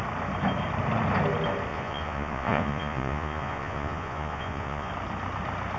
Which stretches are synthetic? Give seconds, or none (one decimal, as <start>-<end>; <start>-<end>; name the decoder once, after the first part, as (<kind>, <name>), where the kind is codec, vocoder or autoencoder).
1.7-4.9 (vocoder, Vocos)

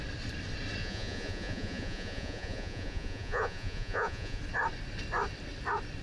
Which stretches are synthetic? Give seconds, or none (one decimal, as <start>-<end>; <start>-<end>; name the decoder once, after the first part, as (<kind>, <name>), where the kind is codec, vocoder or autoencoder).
0.8-4.4 (vocoder, Vocos)

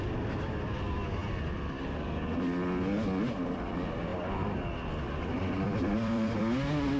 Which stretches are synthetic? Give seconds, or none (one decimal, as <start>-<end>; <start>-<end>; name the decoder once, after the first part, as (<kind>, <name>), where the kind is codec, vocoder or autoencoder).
4.1-6.4 (vocoder, BigVGAN v2)

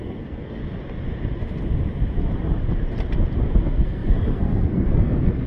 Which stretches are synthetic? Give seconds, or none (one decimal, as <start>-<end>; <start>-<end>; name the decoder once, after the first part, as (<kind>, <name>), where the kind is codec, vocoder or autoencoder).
0.0-0.6 (codec, SNAC); 3.6-5.5

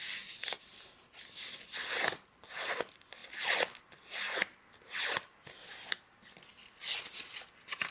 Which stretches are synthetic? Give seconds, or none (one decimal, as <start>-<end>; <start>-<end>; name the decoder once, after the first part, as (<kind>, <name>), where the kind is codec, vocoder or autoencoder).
none

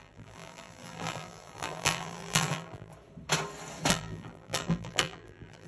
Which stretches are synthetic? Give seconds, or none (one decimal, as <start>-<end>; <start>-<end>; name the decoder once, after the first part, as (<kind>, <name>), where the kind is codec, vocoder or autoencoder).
0.0-2.9 (vocoder, BigVGAN v2); 3.9-5.7

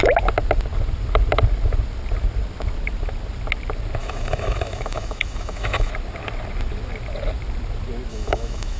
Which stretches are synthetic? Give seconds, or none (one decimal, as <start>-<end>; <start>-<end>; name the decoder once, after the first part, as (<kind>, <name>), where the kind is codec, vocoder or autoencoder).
4.0-5.9 (autoencoder, DAC-VAE); 8.1-8.8

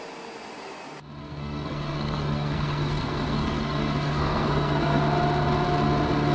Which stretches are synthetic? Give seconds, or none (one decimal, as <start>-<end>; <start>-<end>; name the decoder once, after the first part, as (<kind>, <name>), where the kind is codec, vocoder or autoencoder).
1.2-5.0 (codec, SNAC)